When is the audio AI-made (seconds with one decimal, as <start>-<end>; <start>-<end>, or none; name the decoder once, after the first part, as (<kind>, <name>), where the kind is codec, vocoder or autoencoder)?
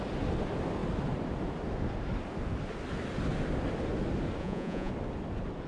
4.4-4.9 (vocoder, Vocos)